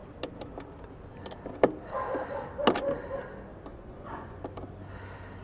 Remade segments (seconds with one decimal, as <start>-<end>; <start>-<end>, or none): 3.7-4.4